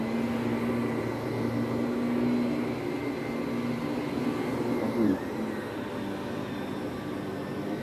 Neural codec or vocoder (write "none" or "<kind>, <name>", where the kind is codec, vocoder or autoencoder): none